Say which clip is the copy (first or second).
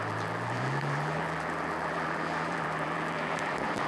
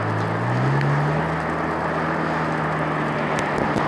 first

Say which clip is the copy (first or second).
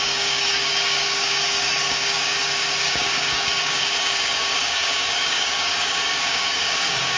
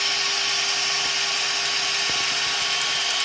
first